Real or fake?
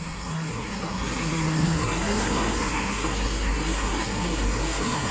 fake